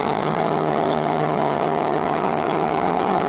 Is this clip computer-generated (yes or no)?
yes